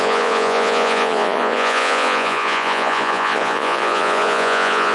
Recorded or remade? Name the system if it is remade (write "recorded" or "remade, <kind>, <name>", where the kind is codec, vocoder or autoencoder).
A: remade, vocoder, Vocos